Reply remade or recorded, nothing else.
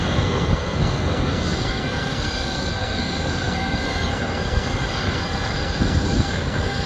remade